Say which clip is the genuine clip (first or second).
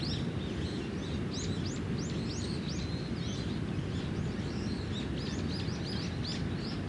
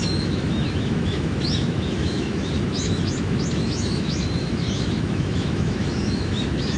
first